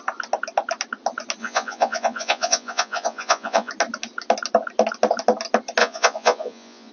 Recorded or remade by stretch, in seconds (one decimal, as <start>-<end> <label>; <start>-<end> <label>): 0.0-1.4 recorded; 1.4-3.7 remade; 3.7-5.8 recorded; 5.8-6.9 remade

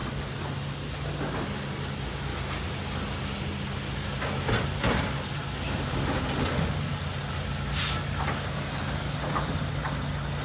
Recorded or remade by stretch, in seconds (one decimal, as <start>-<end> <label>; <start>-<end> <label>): 0.0-10.4 recorded

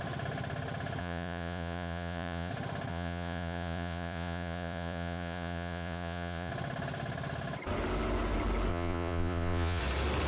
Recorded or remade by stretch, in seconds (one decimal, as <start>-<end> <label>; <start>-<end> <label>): 0.0-1.0 recorded; 1.0-2.5 remade; 2.5-2.9 recorded; 2.9-6.5 remade; 6.5-8.7 recorded; 8.7-9.8 remade; 9.8-10.3 recorded